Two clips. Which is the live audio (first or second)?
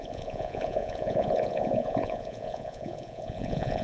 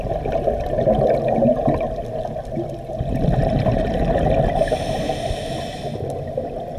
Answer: second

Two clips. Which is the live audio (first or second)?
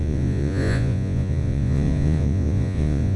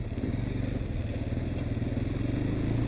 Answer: second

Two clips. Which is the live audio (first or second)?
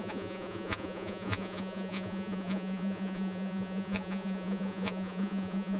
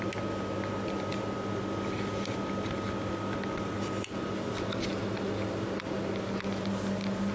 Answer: second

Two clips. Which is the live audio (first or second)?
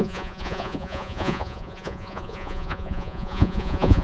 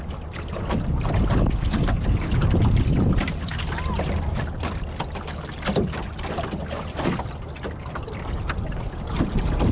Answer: second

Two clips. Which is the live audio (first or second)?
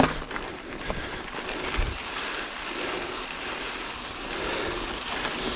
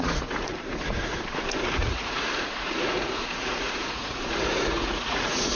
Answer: first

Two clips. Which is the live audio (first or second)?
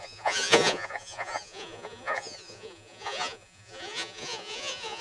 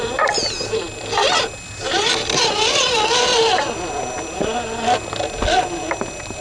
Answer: second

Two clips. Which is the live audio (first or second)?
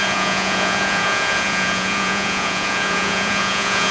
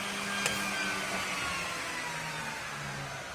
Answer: second